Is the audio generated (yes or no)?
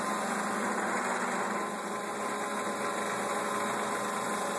no